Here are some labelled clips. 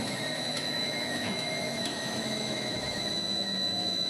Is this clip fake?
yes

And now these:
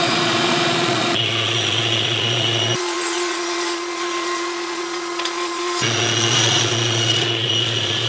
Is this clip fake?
yes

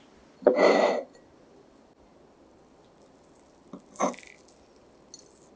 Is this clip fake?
no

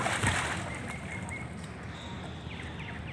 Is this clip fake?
no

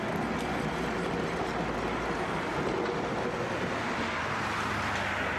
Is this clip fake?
no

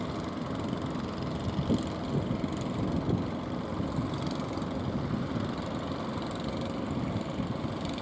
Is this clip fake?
no